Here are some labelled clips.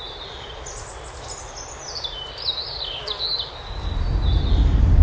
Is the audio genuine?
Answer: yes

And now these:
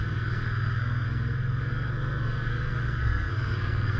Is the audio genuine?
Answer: no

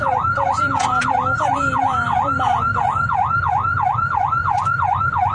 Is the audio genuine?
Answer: no